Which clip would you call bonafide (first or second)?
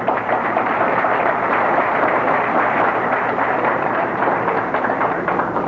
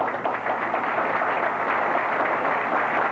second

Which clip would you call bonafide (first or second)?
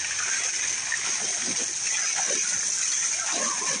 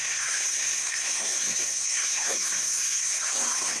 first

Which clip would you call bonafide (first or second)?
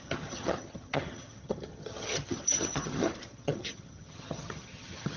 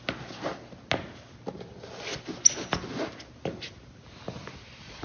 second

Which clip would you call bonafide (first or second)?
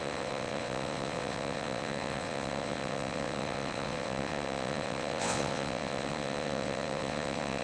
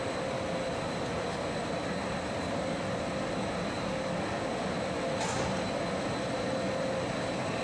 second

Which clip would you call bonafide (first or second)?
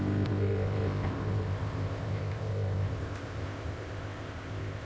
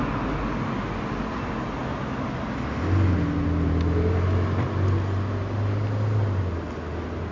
second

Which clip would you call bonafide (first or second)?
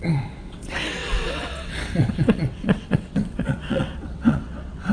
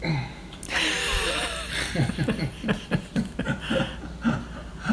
second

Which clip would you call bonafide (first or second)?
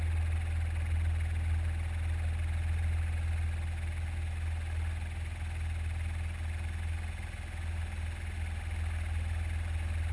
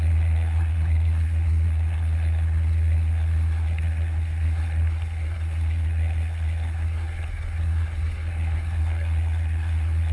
first